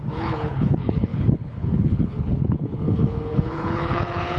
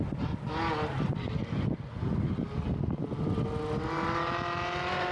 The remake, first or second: first